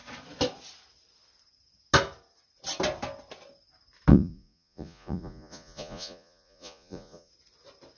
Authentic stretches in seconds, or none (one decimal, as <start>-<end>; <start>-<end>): 0.0-4.1; 7.3-8.0